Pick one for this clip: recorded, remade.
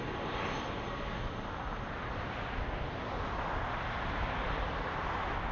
recorded